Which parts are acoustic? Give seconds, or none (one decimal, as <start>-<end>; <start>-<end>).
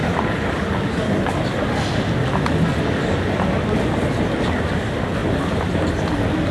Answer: 1.0-6.5